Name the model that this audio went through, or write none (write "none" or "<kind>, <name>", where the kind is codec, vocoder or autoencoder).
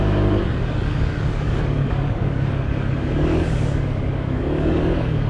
codec, DAC